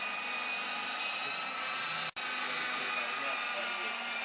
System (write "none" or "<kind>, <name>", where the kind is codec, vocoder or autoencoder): none